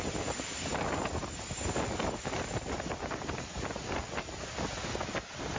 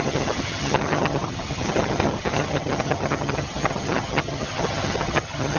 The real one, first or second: first